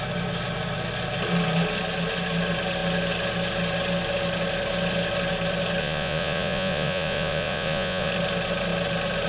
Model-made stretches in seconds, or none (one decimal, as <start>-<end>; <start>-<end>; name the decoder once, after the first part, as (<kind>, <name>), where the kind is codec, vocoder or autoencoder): 5.8-8.1 (vocoder, Vocos)